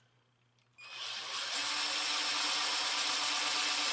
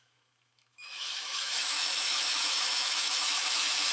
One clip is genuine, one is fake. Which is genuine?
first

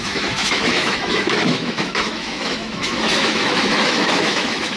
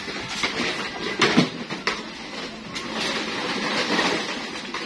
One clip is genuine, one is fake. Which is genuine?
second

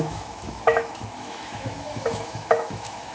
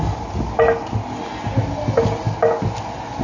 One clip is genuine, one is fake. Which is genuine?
second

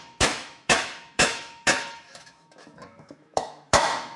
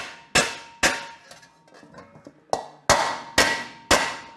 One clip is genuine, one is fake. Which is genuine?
second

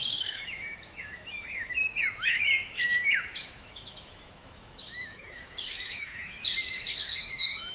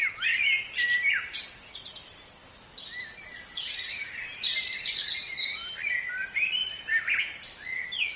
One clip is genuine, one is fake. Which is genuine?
second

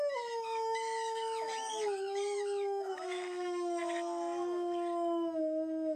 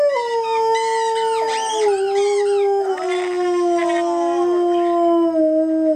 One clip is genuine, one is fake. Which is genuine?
second